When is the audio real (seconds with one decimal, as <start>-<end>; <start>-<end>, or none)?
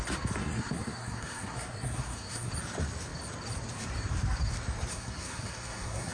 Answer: 0.0-0.4; 2.5-4.9